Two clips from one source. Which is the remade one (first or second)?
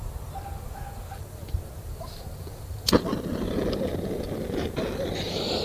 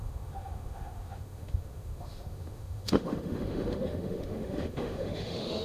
second